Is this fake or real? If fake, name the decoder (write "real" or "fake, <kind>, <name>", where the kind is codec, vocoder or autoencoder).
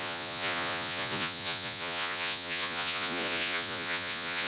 fake, vocoder, Vocos